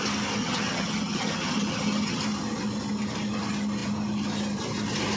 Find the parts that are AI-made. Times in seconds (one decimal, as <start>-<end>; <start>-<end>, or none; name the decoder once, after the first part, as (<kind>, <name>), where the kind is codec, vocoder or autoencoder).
0.4-2.2 (vocoder, HiFi-GAN)